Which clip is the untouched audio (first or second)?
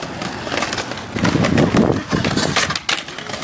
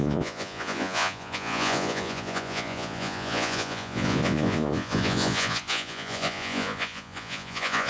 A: first